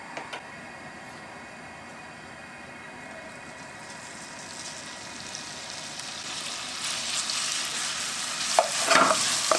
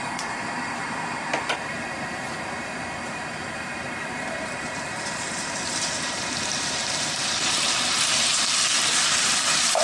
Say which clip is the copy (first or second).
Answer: second